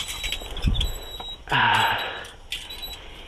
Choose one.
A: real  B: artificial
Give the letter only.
A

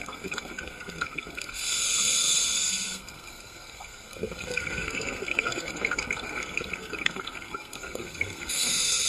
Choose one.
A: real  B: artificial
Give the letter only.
B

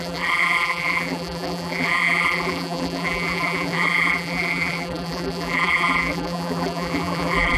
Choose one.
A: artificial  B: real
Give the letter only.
A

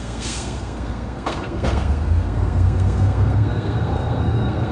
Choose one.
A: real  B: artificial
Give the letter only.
B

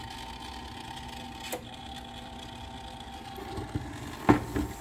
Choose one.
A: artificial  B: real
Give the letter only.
B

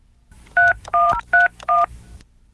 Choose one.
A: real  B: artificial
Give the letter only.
B